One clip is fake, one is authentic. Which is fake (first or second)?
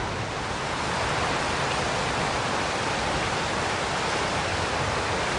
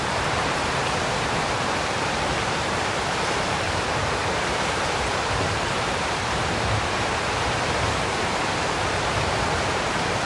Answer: second